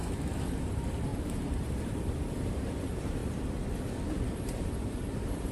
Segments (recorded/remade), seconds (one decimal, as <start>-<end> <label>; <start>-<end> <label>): 0.0-0.6 recorded; 0.6-3.2 remade; 3.2-4.3 recorded; 4.3-5.5 remade